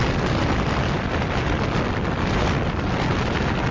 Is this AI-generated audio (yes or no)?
no